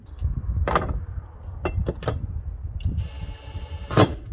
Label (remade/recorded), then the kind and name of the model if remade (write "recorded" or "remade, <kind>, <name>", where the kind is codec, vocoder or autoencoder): recorded